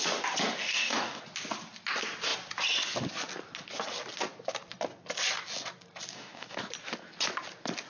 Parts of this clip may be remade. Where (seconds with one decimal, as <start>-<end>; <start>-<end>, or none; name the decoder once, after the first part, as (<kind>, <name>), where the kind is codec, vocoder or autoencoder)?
0.6-1.2 (codec, DAC); 6.1-6.7